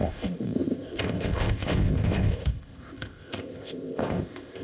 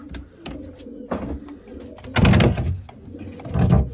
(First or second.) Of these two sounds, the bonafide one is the second